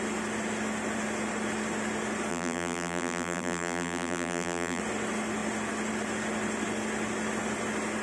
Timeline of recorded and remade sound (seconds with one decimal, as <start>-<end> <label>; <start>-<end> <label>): 0.0-2.3 recorded; 2.3-4.8 remade; 4.8-8.0 recorded